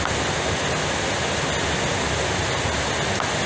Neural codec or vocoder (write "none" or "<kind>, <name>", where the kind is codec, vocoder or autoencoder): none